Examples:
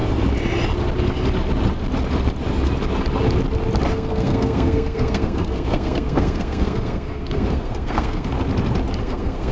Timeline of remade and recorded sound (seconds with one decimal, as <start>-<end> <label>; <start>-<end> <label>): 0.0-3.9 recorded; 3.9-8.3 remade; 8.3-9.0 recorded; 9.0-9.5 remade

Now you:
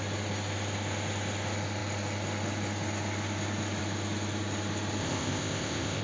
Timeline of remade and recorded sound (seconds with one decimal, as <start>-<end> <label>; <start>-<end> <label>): 0.0-5.0 recorded; 5.0-6.0 remade

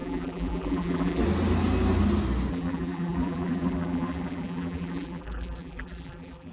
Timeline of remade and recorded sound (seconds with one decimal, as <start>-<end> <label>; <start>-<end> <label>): 0.0-1.2 remade; 1.2-2.5 recorded; 2.5-6.5 remade

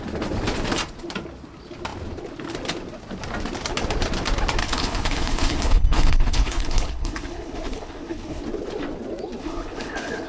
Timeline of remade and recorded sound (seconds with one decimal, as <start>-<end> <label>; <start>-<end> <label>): 0.0-4.6 recorded; 4.6-8.4 remade; 8.4-9.4 recorded; 9.4-10.3 remade

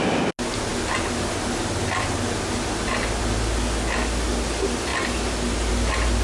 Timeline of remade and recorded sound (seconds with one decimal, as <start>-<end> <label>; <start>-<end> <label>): 0.0-6.2 recorded

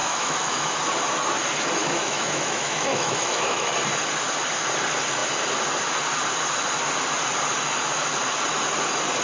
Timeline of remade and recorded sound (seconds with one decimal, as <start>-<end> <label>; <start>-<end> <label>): 0.0-0.8 remade; 0.8-1.8 recorded; 1.8-3.7 remade; 3.7-9.2 recorded

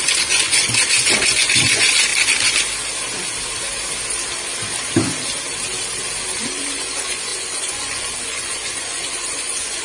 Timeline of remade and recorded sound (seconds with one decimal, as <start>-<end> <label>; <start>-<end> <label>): 0.0-2.1 remade; 2.1-6.4 recorded; 6.4-9.8 remade

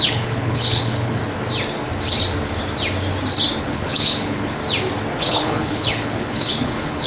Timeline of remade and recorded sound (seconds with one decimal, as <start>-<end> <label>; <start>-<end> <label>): 0.0-1.2 remade; 1.2-3.6 recorded; 3.6-4.6 remade; 4.6-5.2 recorded; 5.2-7.1 remade